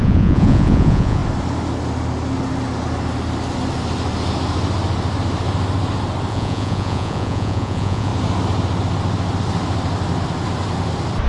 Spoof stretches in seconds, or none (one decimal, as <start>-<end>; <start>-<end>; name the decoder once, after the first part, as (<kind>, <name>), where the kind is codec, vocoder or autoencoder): 0.0-1.2 (vocoder, Vocos); 6.3-8.1